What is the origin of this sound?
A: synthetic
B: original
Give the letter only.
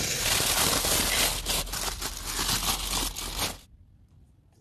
B